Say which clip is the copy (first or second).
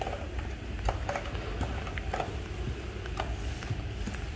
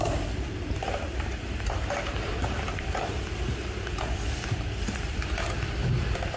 second